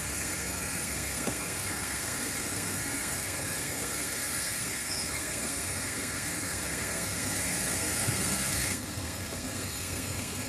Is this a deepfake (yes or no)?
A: yes